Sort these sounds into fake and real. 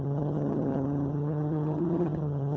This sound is fake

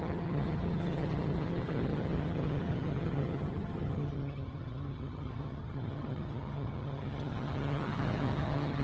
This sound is fake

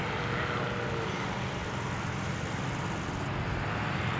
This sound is real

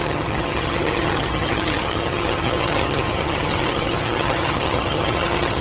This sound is fake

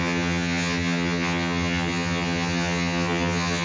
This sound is fake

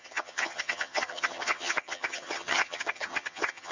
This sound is fake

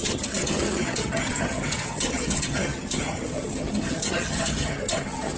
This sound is fake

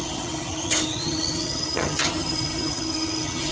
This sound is fake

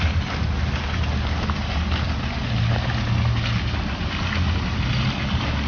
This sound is real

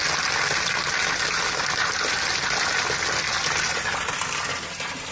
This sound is real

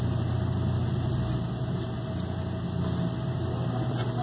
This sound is real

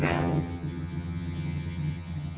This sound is fake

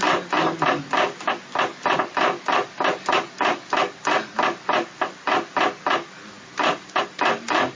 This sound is real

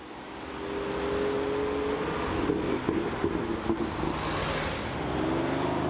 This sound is real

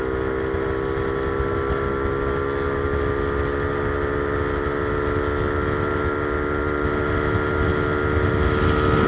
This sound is real